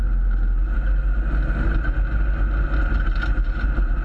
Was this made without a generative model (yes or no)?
yes